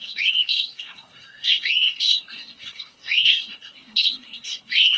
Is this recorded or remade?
remade